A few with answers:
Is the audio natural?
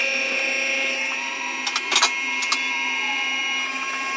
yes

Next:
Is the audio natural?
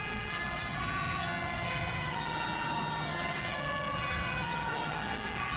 no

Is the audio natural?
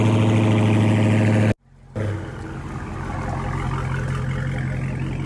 yes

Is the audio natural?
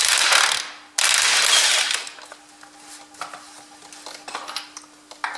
yes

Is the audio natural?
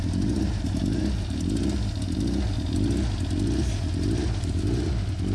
yes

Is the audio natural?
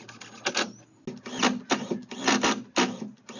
yes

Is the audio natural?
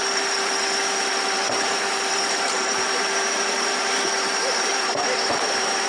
no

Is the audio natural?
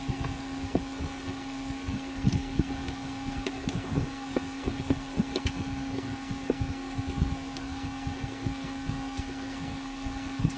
no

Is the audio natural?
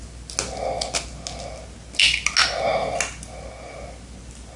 yes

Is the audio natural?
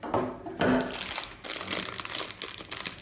yes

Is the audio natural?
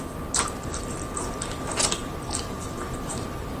yes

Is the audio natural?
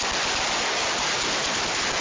yes